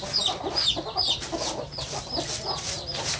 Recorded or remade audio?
recorded